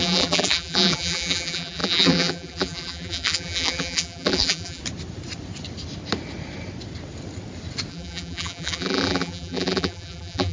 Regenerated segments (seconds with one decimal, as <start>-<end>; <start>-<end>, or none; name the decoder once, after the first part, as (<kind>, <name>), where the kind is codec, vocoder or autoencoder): 0.0-4.8 (vocoder, BigVGAN v2); 7.9-10.5